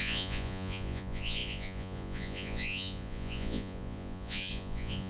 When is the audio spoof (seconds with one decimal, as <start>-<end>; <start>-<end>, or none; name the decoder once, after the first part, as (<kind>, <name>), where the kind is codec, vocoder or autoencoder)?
0.0-5.1 (vocoder, Vocos)